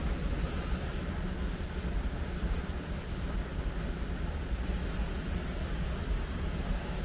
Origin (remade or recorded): recorded